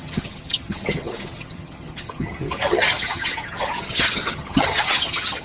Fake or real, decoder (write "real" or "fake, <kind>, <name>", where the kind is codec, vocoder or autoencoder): fake, vocoder, HiFi-GAN